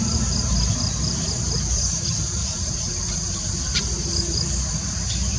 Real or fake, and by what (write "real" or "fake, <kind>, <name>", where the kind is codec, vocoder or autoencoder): fake, vocoder, BigVGAN v2